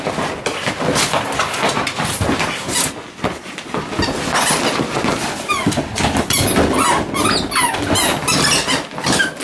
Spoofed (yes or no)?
no